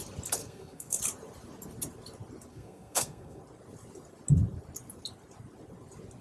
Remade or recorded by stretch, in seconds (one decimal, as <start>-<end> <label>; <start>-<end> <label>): 0.0-0.4 recorded; 0.4-1.0 remade; 1.0-2.5 recorded; 2.5-3.4 remade; 3.4-6.2 recorded